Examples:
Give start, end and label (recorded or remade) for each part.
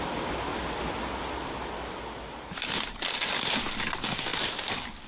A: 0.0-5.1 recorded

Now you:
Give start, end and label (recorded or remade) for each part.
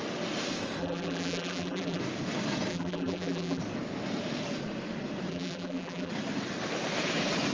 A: 0.0-0.8 recorded; 0.8-2.0 remade; 2.0-2.7 recorded; 2.7-3.6 remade; 3.6-5.3 recorded; 5.3-6.1 remade; 6.1-7.5 recorded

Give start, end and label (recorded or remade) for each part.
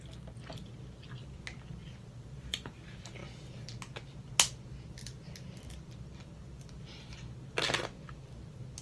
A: 0.0-1.8 recorded; 1.8-2.8 remade; 2.8-8.8 recorded